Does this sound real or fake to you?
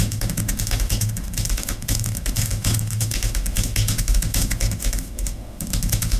fake